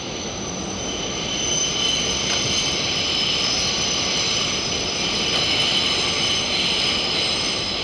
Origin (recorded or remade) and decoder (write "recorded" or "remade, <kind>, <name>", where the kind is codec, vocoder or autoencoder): recorded